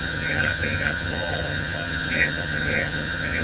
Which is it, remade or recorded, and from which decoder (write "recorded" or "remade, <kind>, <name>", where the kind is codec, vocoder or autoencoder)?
remade, vocoder, HiFi-GAN